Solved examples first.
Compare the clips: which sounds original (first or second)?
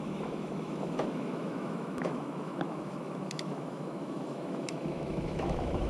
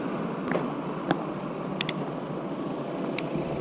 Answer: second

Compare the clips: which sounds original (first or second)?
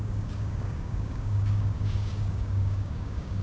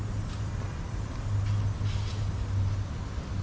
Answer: second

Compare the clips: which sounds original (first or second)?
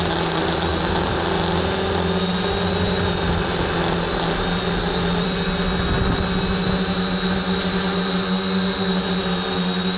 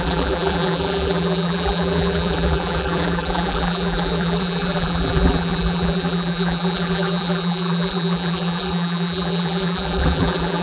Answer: first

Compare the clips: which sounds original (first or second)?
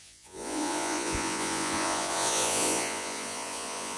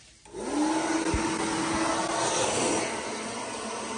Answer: second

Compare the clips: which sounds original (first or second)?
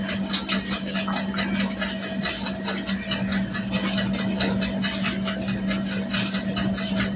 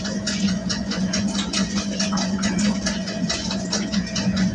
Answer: first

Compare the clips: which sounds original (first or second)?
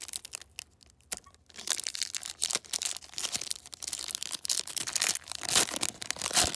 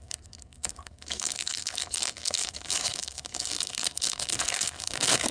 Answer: first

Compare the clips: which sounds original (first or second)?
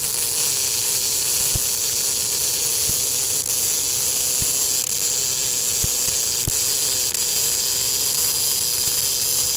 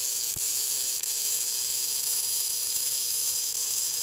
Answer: first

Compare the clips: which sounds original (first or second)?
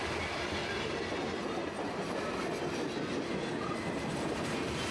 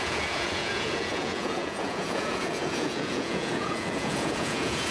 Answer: first